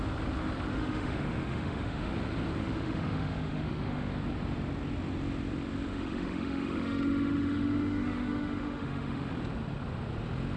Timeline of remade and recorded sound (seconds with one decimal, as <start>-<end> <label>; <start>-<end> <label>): 0.0-0.7 recorded; 0.7-2.1 remade; 2.1-2.6 recorded; 2.6-4.1 remade; 4.1-5.9 recorded; 5.9-9.3 remade; 9.3-10.6 recorded